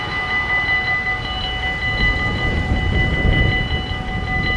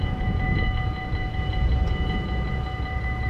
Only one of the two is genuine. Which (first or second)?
first